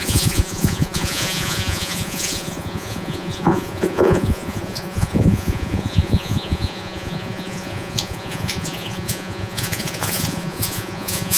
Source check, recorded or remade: remade